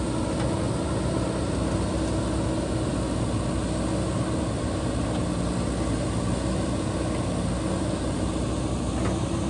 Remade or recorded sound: recorded